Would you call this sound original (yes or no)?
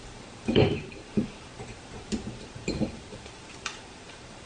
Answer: no